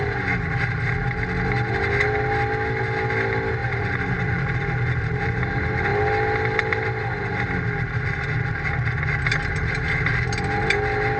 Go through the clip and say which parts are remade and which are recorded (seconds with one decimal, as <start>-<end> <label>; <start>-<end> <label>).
0.0-3.6 recorded; 3.6-5.4 remade; 5.4-11.2 recorded